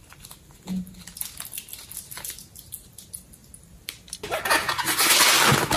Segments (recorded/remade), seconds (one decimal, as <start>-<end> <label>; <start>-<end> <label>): 0.0-5.8 recorded